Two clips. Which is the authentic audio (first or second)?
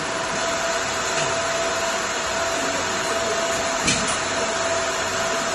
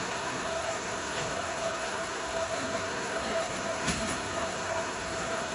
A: first